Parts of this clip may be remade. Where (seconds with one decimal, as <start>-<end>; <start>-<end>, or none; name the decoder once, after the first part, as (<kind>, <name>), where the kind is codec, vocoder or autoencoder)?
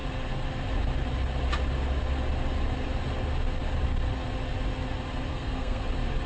5.3-5.8 (codec, SNAC)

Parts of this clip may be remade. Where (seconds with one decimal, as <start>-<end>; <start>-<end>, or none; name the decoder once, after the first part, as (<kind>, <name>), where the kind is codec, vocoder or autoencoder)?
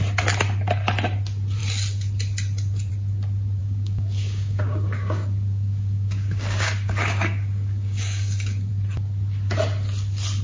3.6-8.7 (codec, DAC)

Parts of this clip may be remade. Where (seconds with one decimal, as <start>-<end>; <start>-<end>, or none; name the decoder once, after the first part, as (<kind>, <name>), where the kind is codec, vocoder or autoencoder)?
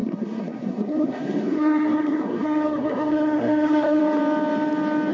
0.0-4.0 (codec, SNAC)